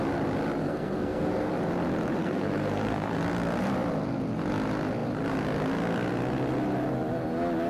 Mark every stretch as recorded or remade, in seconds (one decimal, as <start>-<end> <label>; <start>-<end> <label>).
0.0-0.6 recorded; 0.6-1.5 remade; 1.5-2.2 recorded; 2.2-3.2 remade; 3.2-7.7 recorded